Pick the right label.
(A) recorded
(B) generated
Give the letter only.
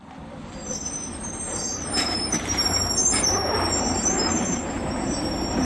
B